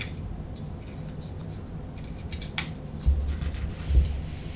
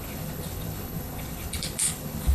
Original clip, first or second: first